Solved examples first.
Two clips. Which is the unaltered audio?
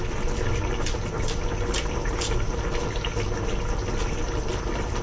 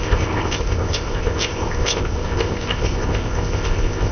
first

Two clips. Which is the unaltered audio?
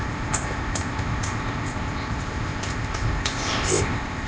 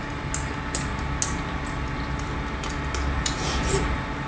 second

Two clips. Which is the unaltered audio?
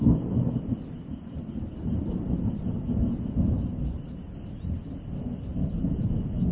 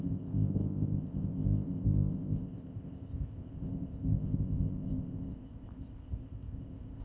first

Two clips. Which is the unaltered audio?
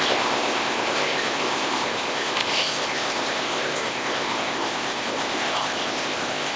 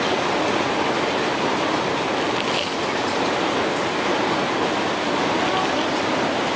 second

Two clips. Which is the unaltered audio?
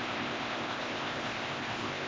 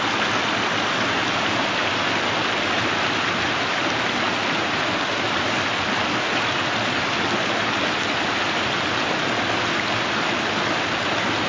second